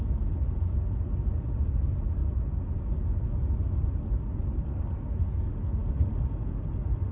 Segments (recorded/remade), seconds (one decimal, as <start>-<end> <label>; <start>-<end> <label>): 0.0-7.1 recorded